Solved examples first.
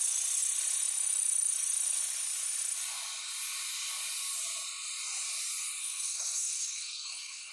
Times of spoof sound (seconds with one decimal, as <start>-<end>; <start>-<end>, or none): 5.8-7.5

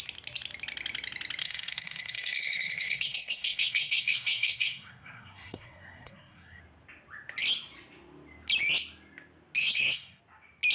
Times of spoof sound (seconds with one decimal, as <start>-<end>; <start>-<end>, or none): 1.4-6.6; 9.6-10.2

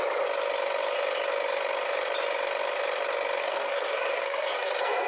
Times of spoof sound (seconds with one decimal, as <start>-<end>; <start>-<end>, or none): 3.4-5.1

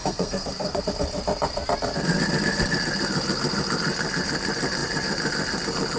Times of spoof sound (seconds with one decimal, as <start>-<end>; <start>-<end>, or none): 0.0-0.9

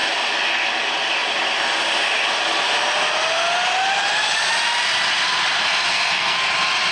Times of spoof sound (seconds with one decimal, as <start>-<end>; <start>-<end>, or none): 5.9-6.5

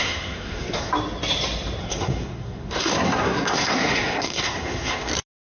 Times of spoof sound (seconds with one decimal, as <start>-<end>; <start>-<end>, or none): 0.0-0.9; 1.8-5.1

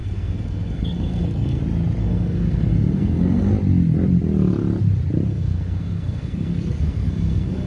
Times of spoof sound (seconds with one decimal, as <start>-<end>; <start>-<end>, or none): 0.0-1.6; 2.0-3.5; 5.3-7.7